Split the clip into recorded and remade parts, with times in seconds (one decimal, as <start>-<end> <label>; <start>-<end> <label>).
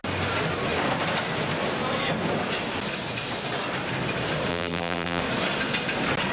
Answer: 0.0-4.5 recorded; 4.5-5.2 remade; 5.2-6.3 recorded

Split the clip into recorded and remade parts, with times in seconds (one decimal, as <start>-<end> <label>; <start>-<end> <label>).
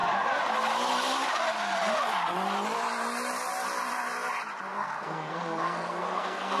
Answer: 0.0-4.7 recorded; 4.7-6.6 remade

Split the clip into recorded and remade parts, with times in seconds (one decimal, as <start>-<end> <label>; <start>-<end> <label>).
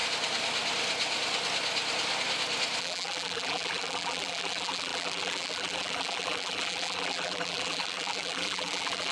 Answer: 0.0-2.8 recorded; 2.8-9.1 remade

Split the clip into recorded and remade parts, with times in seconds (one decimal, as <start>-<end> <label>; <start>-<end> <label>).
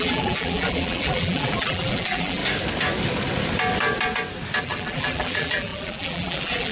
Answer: 0.0-2.4 remade; 2.4-4.6 recorded; 4.6-6.7 remade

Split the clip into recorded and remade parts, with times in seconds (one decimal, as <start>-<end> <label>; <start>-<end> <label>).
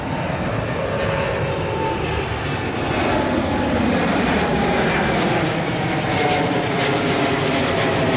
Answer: 0.0-4.1 recorded; 4.1-5.0 remade; 5.0-8.2 recorded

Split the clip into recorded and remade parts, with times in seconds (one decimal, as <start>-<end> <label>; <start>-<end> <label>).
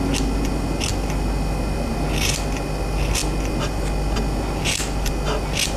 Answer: 0.0-5.8 recorded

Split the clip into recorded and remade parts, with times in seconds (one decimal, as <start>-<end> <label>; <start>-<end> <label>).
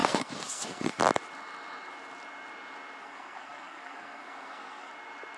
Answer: 0.0-1.0 remade; 1.0-3.0 recorded; 3.0-4.9 remade; 4.9-5.4 recorded